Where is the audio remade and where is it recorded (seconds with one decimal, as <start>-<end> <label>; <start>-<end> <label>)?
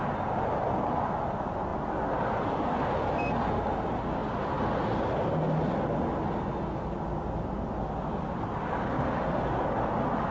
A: 0.0-10.3 recorded